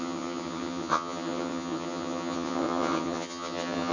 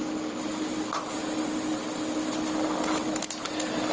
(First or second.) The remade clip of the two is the first